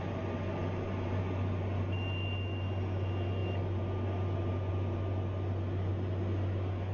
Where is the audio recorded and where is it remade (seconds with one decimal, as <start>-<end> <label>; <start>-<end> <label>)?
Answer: 0.0-6.9 recorded